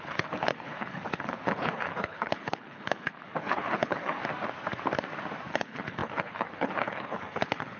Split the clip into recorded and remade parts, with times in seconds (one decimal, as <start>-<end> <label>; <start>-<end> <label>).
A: 0.0-4.2 remade; 4.2-5.5 recorded; 5.5-7.8 remade

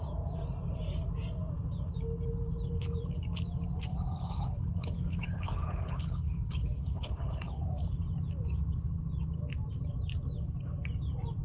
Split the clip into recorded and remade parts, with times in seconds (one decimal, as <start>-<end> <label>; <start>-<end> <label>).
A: 0.0-3.9 recorded; 3.9-7.6 remade; 7.6-11.4 recorded

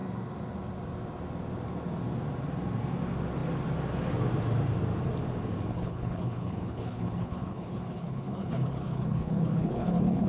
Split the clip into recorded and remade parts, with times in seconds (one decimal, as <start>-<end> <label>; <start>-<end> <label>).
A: 0.0-5.7 recorded; 5.7-10.3 remade